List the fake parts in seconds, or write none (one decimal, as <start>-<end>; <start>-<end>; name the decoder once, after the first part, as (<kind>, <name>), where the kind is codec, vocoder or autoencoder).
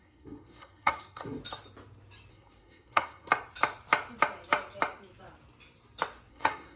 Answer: 0.0-1.4 (codec, SNAC); 2.3-3.3; 6.3-6.8